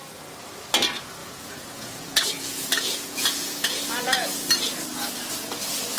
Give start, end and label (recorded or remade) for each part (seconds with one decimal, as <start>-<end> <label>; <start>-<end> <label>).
0.0-1.2 recorded; 1.2-4.5 remade; 4.5-6.0 recorded